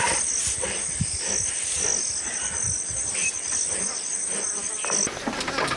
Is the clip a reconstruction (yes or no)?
no